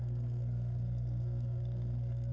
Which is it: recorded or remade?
remade